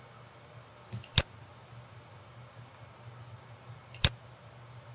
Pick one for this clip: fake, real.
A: real